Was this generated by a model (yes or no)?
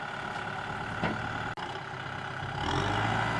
no